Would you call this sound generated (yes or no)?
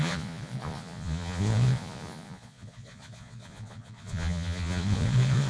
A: yes